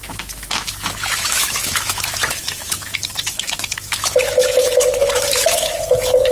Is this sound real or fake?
fake